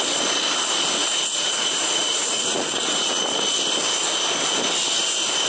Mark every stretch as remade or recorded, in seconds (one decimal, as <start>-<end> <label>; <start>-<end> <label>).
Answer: 0.0-1.0 recorded; 1.0-3.2 remade; 3.2-5.5 recorded